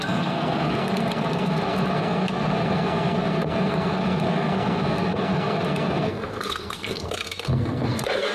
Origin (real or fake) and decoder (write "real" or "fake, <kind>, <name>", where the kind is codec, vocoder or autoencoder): fake, codec, SNAC